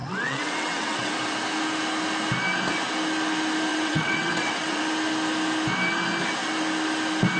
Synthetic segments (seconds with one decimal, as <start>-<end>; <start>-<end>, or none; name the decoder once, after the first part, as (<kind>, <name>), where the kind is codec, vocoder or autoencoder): 0.0-1.1 (vocoder, WaveNeXt); 3.7-4.8